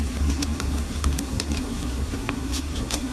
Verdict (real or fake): fake